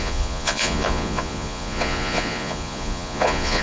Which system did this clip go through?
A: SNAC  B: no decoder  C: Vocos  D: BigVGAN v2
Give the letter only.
C